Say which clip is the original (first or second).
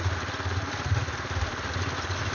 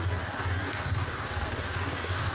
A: first